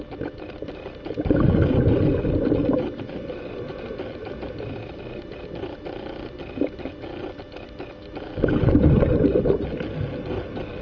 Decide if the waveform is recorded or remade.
recorded